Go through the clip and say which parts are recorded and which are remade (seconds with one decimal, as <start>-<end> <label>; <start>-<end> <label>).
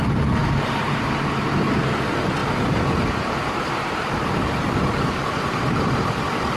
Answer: 0.0-0.4 recorded; 0.4-1.9 remade; 1.9-2.4 recorded; 2.4-6.6 remade